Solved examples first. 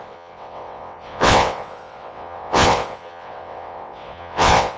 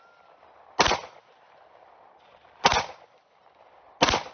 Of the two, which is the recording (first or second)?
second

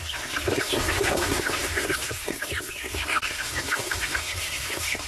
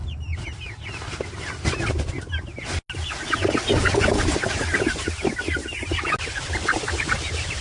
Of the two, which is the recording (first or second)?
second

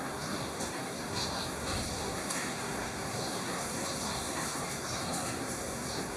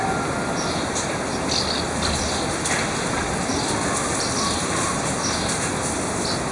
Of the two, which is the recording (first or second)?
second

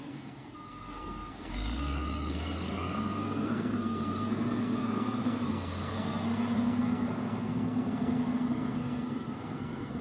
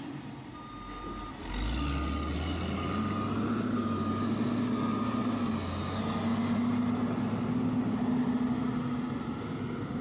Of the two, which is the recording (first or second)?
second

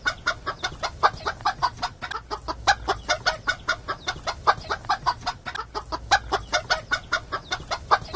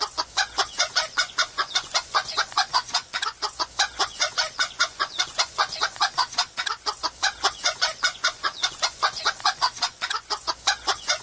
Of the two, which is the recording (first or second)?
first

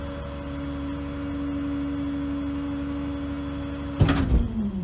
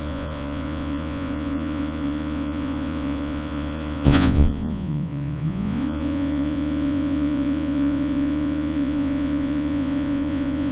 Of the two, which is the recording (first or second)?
first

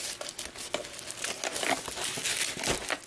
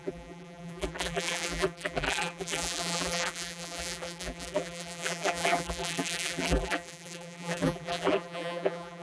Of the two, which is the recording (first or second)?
first